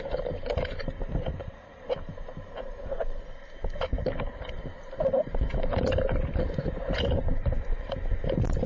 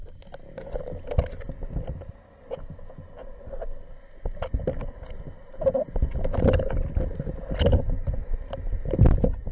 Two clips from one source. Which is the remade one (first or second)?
first